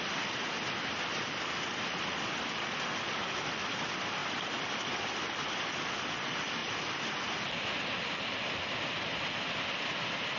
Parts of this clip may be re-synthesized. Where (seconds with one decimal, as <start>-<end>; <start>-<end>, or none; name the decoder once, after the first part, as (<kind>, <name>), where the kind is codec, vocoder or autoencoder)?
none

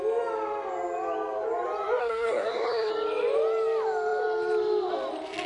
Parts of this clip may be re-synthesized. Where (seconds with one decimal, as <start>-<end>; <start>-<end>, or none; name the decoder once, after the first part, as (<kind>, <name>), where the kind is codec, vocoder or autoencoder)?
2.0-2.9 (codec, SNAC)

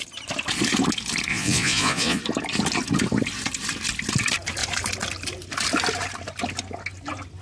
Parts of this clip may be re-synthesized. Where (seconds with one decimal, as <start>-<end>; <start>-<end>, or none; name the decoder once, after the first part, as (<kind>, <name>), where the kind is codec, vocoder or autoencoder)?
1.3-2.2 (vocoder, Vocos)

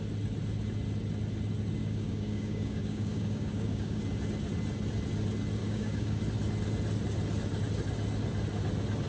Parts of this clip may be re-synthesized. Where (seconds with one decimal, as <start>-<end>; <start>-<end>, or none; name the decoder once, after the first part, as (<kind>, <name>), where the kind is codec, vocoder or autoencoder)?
1.8-4.0 (codec, DAC); 5.6-6.2

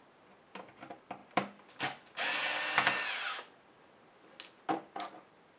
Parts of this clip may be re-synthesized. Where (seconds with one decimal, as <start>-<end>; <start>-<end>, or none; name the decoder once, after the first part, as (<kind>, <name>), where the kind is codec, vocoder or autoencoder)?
none

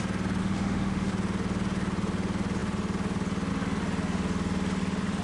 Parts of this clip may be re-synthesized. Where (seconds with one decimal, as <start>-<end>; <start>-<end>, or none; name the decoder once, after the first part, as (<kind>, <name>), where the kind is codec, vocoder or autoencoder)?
0.4-1.1 (autoencoder, DAC-VAE)